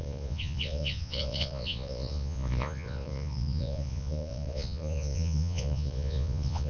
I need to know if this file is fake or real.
fake